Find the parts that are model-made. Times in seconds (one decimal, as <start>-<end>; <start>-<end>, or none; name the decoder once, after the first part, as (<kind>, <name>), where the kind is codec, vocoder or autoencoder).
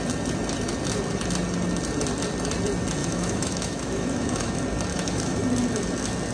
3.0-4.5 (autoencoder, DAC-VAE); 4.9-5.4